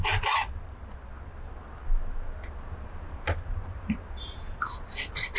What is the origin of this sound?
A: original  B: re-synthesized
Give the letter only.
A